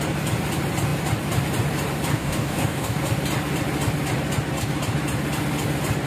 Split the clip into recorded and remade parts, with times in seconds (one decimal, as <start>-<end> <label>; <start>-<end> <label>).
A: 0.0-2.1 recorded; 2.1-3.0 remade; 3.0-6.1 recorded